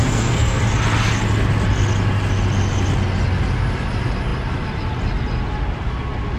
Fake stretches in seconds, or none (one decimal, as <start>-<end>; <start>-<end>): 0.0-0.6